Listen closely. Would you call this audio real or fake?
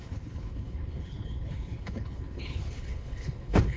fake